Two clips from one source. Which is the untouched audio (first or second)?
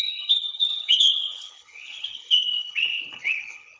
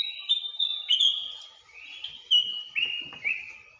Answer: second